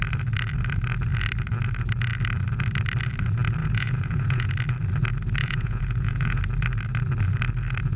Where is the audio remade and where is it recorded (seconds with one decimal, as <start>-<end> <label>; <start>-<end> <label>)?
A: 0.0-3.6 recorded; 3.6-4.5 remade; 4.5-5.4 recorded; 5.4-6.4 remade; 6.4-8.0 recorded